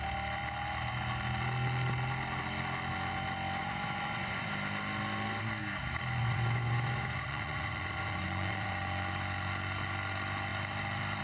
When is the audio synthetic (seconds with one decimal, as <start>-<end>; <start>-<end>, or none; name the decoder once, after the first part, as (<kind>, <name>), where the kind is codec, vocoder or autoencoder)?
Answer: 3.6-4.5 (vocoder, Vocos); 6.2-8.7